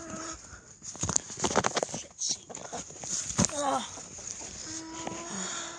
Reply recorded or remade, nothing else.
recorded